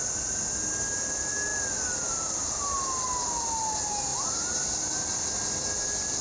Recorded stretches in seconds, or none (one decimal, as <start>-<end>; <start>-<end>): 0.0-6.2